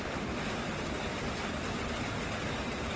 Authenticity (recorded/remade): recorded